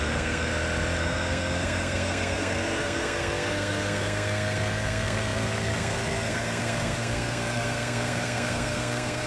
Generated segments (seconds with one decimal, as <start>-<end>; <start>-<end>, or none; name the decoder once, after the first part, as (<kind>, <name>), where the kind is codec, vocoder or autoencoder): 0.0-0.5 (codec, SNAC); 1.0-9.3